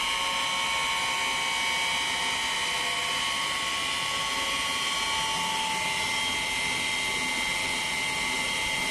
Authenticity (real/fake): real